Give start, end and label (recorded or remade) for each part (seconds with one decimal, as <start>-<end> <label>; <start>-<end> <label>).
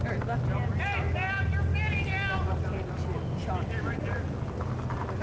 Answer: 0.0-5.2 recorded